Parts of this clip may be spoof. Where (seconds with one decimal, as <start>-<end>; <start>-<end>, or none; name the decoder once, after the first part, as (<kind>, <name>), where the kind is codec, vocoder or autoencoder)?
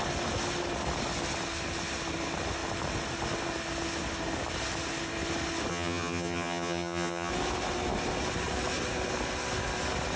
5.7-7.3 (vocoder, HiFi-GAN)